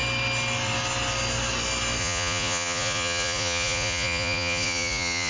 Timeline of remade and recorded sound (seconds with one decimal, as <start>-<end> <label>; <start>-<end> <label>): 0.0-2.0 recorded; 2.0-5.3 remade